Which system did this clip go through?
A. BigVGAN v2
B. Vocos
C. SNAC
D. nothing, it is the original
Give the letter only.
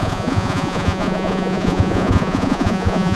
B